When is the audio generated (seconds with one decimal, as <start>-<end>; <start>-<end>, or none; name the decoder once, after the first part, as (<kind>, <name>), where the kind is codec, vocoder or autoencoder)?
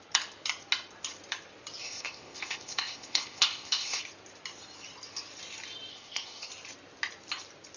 1.8-4.0 (codec, ZipCodec); 5.9-6.5